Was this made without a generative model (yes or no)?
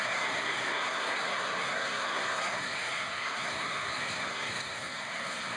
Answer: no